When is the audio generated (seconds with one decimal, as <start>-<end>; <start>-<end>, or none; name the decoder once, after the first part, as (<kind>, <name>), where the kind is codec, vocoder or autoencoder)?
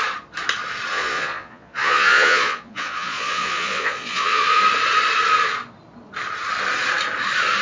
0.9-4.6 (vocoder, Vocos)